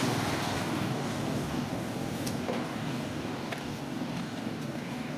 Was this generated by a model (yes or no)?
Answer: yes